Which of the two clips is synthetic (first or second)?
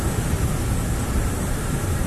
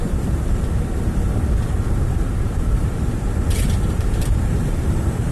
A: second